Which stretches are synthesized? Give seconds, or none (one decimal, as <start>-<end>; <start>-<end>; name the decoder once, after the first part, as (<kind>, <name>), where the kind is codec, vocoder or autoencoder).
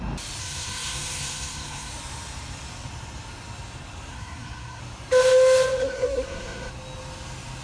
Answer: 0.4-1.9 (codec, SNAC); 4.1-4.8; 5.8-6.7